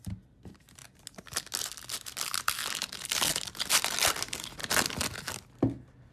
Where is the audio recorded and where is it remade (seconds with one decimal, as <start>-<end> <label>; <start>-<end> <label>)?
0.0-6.1 recorded